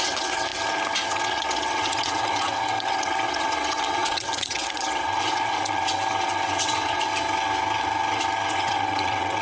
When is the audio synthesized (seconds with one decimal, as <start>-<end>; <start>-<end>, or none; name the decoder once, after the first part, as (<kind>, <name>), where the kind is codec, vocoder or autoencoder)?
0.0-0.5 (vocoder, WaveNeXt); 1.1-7.1; 8.5-9.4